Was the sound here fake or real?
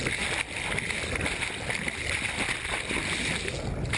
real